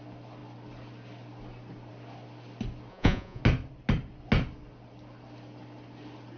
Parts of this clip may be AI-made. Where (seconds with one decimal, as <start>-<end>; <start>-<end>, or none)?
2.9-3.4